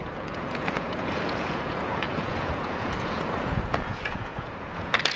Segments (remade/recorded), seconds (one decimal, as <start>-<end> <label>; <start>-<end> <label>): 0.0-5.2 remade